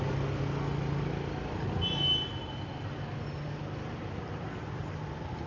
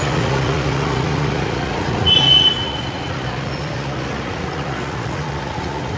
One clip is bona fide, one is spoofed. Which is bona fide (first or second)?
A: first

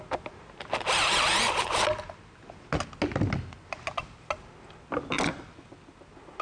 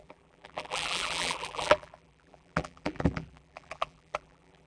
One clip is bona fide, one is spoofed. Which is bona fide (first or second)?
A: first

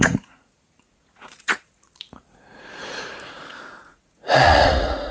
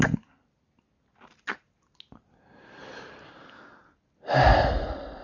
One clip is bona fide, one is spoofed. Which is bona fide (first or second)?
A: second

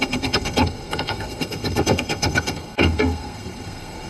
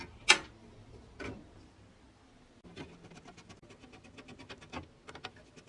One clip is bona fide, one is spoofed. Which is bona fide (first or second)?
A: second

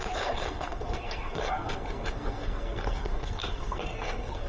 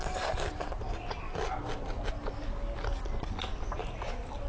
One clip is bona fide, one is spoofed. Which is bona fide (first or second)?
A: second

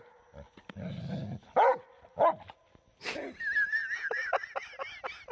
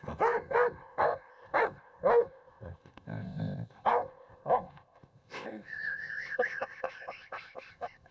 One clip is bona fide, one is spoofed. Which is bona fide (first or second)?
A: first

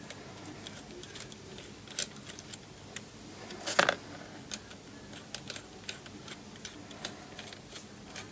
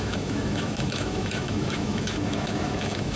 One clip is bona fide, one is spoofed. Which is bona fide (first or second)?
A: first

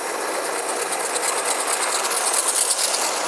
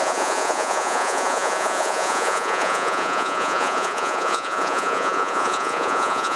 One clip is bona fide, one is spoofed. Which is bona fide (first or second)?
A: first